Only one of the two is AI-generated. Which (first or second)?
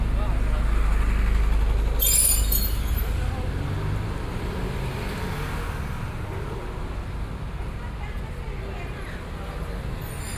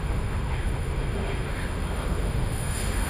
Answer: second